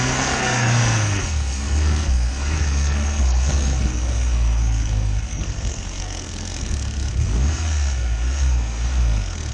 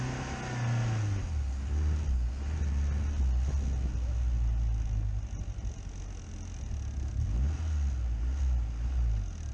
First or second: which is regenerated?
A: first